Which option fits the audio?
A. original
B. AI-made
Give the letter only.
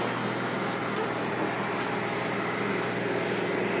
A